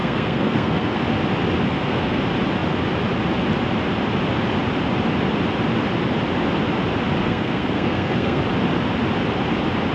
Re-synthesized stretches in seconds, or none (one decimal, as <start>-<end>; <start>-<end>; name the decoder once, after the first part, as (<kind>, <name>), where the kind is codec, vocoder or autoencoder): 0.0-1.0 (codec, SNAC); 1.7-2.2; 7.2-8.4